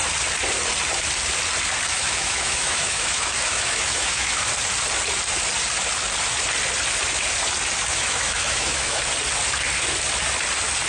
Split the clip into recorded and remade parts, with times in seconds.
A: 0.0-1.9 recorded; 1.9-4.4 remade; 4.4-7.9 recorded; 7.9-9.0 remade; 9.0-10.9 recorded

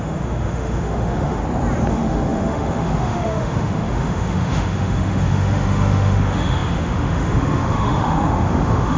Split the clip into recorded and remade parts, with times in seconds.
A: 0.0-1.4 remade; 1.4-1.9 recorded; 1.9-9.0 remade

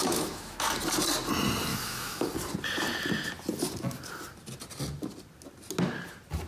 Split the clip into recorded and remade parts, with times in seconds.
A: 0.0-0.7 remade; 0.7-1.7 recorded; 1.7-2.3 remade; 2.3-6.5 recorded